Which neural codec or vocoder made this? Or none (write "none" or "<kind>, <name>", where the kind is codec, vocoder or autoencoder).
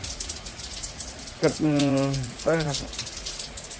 vocoder, Vocos